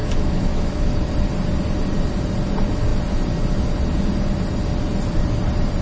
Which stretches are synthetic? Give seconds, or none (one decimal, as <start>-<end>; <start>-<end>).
0.0-1.1